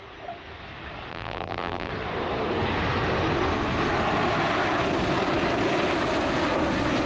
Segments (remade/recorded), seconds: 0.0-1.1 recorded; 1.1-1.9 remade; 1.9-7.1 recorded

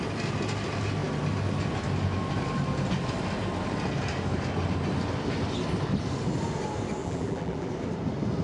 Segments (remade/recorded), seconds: 0.0-7.0 recorded; 7.0-7.7 remade; 7.7-8.4 recorded

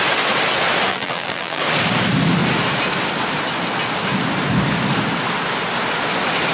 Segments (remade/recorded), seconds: 0.0-0.9 recorded; 0.9-1.6 remade; 1.6-6.5 recorded

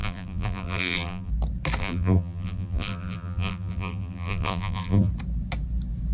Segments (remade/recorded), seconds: 0.0-1.3 remade; 1.3-1.8 recorded; 1.8-5.1 remade; 5.1-6.1 recorded